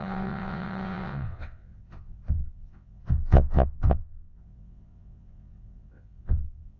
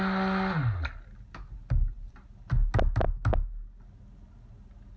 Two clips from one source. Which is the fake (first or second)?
first